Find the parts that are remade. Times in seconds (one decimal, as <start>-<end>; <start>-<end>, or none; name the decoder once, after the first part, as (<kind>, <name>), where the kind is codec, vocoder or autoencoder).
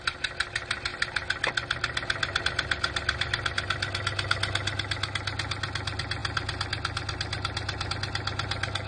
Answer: none